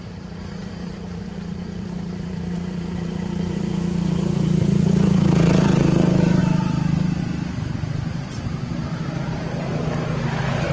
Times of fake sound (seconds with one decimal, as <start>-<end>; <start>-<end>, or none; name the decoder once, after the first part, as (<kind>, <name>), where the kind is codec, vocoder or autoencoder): 0.0-6.4 (vocoder, BigVGAN v2); 7.2-10.7